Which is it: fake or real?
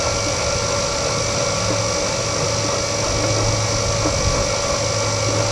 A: real